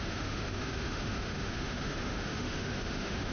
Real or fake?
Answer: fake